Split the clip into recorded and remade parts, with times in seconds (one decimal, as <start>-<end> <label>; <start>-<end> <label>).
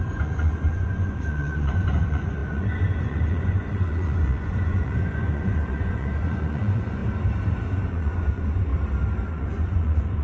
0.0-7.0 remade; 7.0-7.8 recorded; 7.8-8.7 remade; 8.7-9.3 recorded; 9.3-10.2 remade